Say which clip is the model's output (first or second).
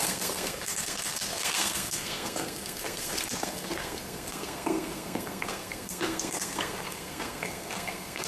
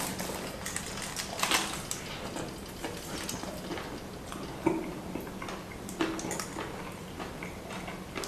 first